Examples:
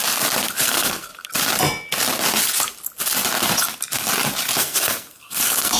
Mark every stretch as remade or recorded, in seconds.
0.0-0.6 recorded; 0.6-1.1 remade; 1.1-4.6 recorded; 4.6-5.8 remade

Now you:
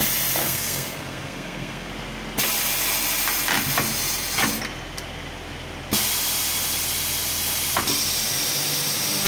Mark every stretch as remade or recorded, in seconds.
0.0-0.4 recorded; 0.4-1.9 remade; 1.9-9.3 recorded

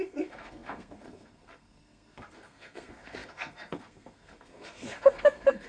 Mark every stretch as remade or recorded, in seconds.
0.0-5.7 remade

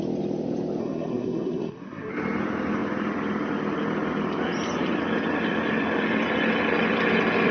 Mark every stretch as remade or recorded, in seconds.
0.0-0.8 recorded; 0.8-2.1 remade; 2.1-7.5 recorded

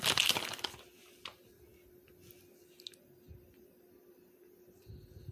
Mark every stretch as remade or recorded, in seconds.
0.0-5.3 recorded

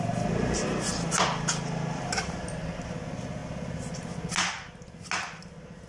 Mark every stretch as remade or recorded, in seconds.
0.0-5.9 recorded